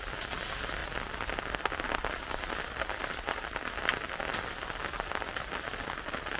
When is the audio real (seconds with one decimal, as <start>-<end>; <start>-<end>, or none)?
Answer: 0.0-6.4